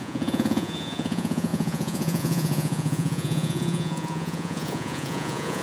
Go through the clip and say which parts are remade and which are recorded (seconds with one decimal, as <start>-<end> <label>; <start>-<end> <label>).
0.0-5.6 remade